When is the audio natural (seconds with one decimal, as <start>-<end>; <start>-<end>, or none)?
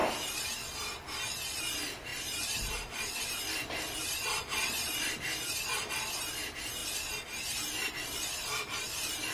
0.0-2.1; 5.9-9.3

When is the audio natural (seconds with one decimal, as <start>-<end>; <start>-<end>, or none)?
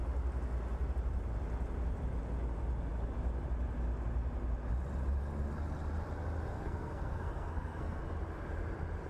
0.0-6.5; 8.0-9.1